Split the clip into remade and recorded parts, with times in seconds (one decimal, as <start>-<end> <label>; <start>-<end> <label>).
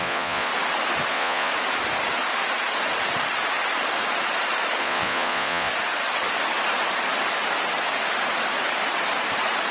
0.0-0.5 remade; 0.5-1.1 recorded; 1.1-1.5 remade; 1.5-4.8 recorded; 4.8-5.7 remade; 5.7-9.7 recorded